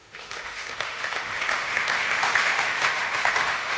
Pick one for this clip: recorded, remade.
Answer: remade